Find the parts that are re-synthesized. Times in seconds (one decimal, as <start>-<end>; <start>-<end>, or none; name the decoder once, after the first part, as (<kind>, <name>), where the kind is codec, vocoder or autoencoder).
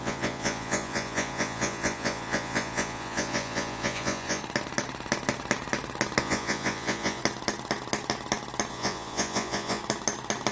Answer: 0.0-4.4 (vocoder, Vocos); 6.2-7.2; 8.7-9.8